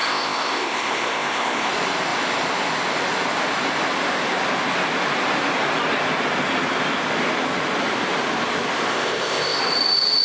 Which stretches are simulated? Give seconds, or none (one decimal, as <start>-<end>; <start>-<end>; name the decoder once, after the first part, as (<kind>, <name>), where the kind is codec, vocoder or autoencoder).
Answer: 0.0-1.7 (codec, ZipCodec); 8.9-9.6